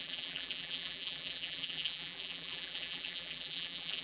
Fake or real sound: fake